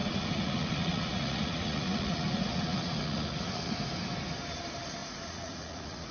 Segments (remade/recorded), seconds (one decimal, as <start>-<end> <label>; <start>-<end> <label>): 0.0-3.7 remade; 3.7-5.0 recorded; 5.0-6.1 remade